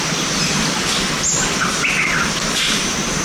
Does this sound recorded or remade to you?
remade